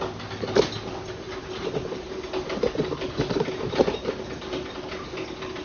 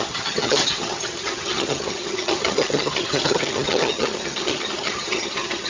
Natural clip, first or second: first